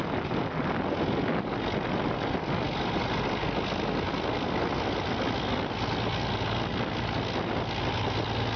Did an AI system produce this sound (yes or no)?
no